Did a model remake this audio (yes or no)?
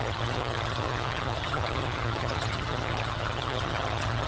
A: yes